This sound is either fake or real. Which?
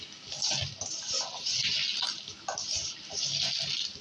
real